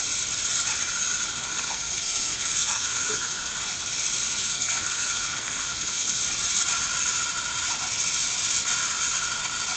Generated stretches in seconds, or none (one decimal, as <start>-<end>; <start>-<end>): 1.4-3.5; 4.4-6.2

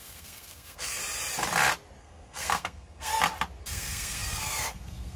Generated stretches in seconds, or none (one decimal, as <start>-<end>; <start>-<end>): 0.0-1.0; 2.0-3.1; 3.6-5.2